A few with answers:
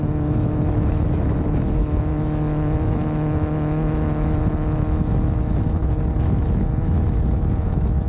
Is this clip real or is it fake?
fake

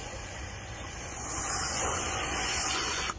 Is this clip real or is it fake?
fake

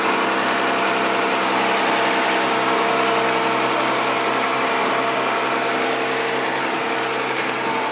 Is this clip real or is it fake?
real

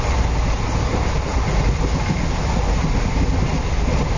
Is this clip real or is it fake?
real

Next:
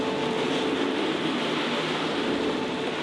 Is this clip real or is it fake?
real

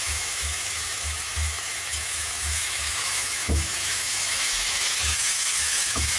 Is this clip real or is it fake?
fake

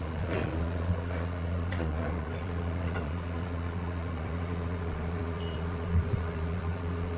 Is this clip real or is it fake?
fake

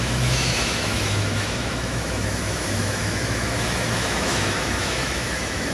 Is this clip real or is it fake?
fake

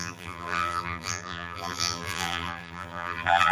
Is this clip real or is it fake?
fake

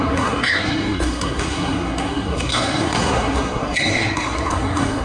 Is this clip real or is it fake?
fake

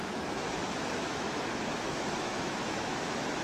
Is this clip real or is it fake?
fake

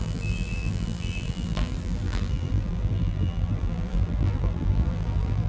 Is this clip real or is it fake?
fake